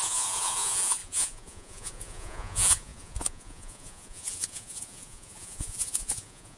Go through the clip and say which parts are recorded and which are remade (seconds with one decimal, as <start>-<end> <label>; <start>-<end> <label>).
0.0-6.6 remade